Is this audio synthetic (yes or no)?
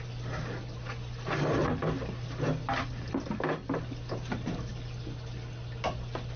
no